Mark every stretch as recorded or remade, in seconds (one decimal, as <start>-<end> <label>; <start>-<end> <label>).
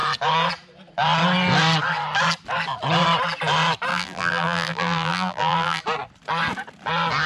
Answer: 0.0-3.9 recorded; 3.9-5.8 remade; 5.8-7.3 recorded